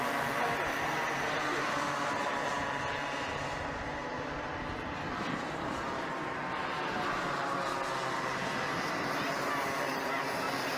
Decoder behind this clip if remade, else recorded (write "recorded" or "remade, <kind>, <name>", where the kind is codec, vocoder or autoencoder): recorded